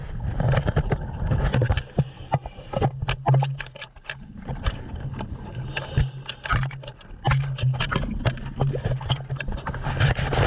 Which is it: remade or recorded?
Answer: recorded